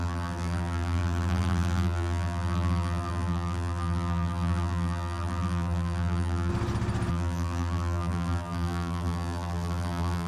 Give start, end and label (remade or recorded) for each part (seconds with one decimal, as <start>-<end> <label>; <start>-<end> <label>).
0.0-6.5 remade; 6.5-7.1 recorded; 7.1-10.3 remade